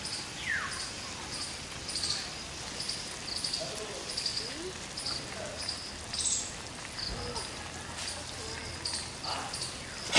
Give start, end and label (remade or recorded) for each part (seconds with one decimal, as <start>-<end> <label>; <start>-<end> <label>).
0.0-10.2 recorded